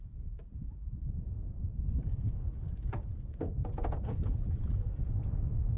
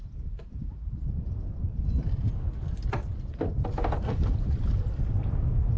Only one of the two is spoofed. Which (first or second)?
first